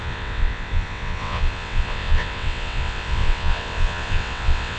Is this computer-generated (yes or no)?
yes